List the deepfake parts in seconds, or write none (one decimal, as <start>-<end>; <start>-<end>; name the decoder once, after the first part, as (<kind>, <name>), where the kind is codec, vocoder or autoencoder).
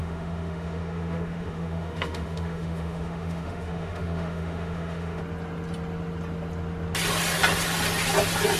0.0-5.2 (autoencoder, DAC-VAE)